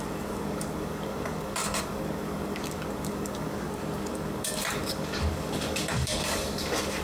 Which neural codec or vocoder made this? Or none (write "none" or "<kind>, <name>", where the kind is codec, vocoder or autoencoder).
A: codec, DAC